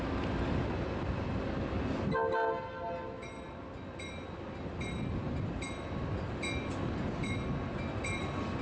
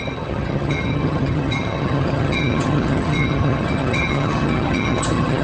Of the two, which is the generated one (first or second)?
second